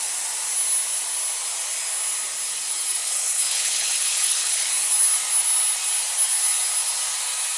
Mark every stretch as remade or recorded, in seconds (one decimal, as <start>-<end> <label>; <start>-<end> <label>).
0.0-3.0 recorded; 3.0-4.7 remade; 4.7-7.6 recorded